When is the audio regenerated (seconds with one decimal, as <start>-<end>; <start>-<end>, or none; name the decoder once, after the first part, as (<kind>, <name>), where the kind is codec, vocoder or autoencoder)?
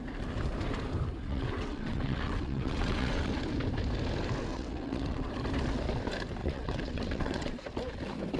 1.2-3.3 (vocoder, WaveNeXt); 4.5-5.3; 6.4-7.5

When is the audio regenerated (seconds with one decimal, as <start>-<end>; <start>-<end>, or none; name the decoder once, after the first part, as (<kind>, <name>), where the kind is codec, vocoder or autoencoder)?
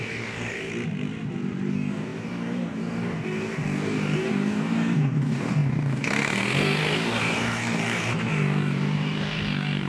0.0-0.7 (codec, DAC); 1.7-9.9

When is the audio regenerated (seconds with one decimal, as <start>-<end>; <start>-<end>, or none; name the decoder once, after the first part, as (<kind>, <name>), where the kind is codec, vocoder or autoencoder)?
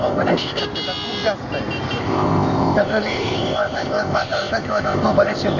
0.0-0.6 (codec, ZipCodec); 2.0-5.6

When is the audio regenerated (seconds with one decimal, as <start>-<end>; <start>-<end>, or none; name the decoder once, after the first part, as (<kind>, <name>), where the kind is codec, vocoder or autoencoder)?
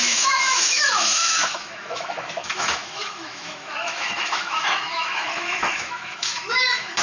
0.0-7.0 (autoencoder, DAC-VAE)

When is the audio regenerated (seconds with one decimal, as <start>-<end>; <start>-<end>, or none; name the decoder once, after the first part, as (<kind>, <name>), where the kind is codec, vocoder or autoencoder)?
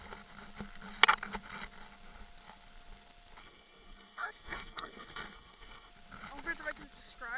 3.4-5.9 (codec, SNAC)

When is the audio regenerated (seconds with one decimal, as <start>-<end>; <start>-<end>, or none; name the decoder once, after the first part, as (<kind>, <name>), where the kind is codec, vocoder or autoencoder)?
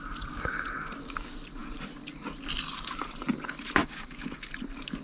3.8-4.4 (codec, DAC)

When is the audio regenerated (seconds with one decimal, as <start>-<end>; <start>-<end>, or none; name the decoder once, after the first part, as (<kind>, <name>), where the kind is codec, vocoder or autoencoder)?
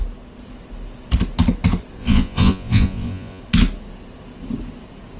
2.0-3.4 (vocoder, Vocos)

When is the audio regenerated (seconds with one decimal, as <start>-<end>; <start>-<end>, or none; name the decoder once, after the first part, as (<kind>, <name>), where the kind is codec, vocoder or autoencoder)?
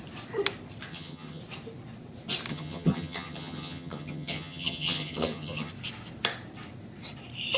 0.9-1.4 (vocoder, HiFi-GAN); 2.5-5.7